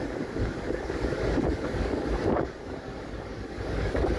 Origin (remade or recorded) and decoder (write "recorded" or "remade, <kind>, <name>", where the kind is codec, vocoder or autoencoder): remade, codec, DAC